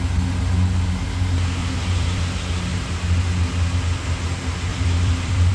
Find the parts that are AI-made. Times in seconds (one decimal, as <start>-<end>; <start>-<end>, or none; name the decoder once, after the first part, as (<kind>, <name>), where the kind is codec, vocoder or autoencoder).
1.6-2.2 (vocoder, BigVGAN v2); 4.7-5.5

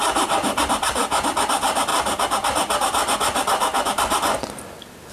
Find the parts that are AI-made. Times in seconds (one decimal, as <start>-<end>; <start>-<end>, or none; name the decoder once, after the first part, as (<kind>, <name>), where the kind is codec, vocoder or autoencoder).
none

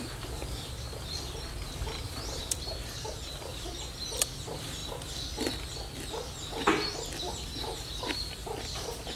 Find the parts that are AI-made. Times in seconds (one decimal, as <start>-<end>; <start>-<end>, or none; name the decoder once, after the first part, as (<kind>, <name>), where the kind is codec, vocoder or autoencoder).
0.0-4.8 (vocoder, BigVGAN v2); 7.3-9.2

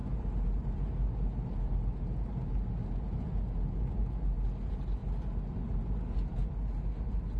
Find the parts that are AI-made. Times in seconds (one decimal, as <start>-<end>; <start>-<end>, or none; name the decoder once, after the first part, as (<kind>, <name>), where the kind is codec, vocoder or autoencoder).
none

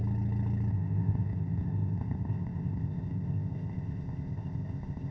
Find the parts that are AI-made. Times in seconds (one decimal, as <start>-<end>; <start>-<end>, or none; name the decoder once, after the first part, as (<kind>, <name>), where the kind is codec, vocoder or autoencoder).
0.7-5.1 (codec, ZipCodec)